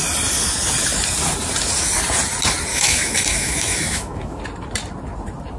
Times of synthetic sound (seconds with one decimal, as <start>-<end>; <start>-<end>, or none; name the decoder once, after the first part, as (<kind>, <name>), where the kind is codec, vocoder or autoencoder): 2.7-4.4 (autoencoder, DAC-VAE)